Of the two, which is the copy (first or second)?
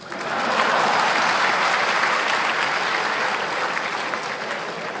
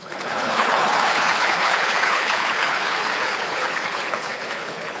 second